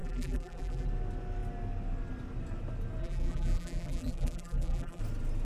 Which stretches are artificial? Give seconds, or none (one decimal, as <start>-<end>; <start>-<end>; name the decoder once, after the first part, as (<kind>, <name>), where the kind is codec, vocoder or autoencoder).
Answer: 0.0-0.9 (vocoder, BigVGAN v2); 3.0-5.0